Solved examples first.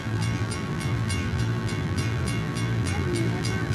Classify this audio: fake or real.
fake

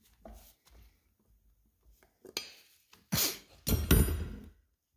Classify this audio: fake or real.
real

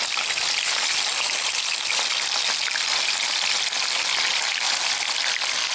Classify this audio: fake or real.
real